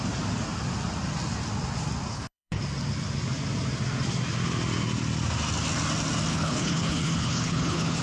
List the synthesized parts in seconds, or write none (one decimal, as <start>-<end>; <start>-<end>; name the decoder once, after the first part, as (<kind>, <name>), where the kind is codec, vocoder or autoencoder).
2.1-2.6 (codec, HILCodec); 6.3-8.0